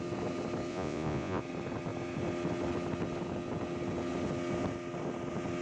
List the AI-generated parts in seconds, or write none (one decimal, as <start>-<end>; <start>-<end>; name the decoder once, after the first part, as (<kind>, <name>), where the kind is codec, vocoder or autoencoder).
0.7-1.4 (vocoder, Vocos)